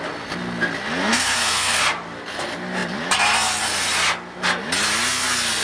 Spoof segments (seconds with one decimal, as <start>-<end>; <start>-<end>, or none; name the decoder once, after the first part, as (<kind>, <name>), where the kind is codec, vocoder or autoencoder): 1.0-1.8 (codec, SNAC)